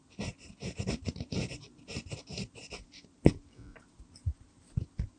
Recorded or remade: recorded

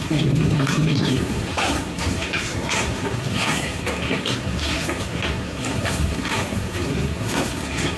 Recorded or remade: remade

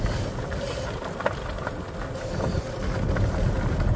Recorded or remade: recorded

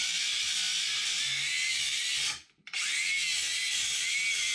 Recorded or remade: recorded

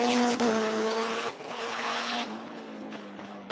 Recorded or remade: remade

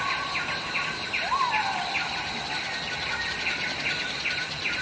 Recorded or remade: recorded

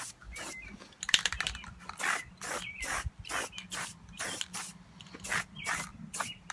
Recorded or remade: recorded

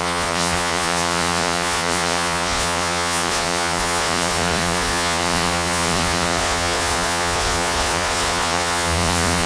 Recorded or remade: remade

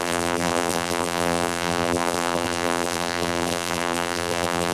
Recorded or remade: remade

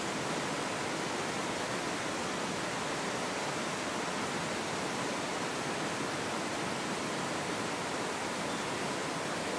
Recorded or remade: recorded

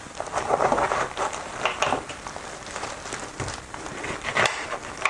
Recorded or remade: remade